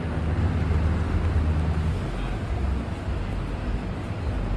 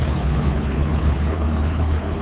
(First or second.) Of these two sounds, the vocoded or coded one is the second